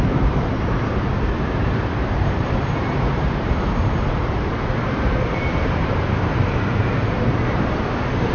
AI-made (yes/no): yes